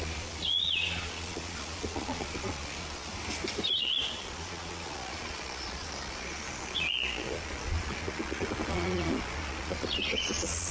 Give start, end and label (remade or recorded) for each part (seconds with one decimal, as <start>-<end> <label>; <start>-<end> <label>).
0.0-3.1 remade; 3.1-3.7 recorded; 3.7-10.7 remade